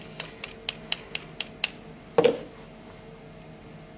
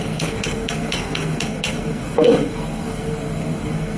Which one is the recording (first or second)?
first